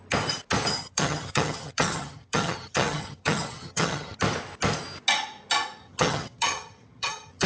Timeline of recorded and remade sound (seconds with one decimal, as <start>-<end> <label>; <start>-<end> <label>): 0.0-0.7 recorded; 0.7-4.2 remade; 4.2-5.8 recorded; 5.8-7.5 remade